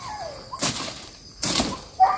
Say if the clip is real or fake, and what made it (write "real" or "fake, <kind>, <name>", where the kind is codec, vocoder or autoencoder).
real